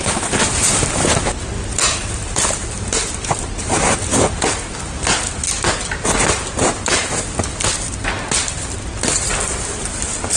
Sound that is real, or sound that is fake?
real